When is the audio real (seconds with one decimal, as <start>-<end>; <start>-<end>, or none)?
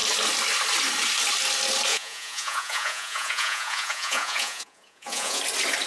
0.0-1.9; 5.4-5.9